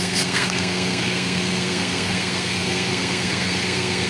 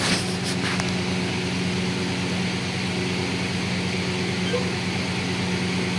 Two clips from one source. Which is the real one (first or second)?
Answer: second